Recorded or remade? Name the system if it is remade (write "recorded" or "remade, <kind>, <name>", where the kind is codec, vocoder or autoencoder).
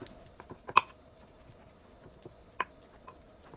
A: recorded